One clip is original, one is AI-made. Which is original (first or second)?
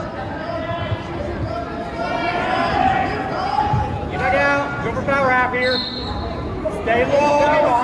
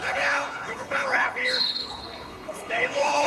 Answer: first